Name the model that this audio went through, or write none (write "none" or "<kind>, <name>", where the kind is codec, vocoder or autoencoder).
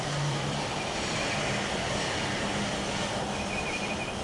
vocoder, BigVGAN v2